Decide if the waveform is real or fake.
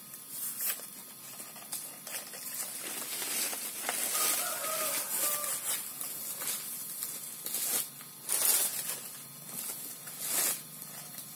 real